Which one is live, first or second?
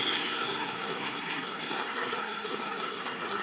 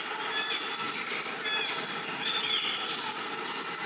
second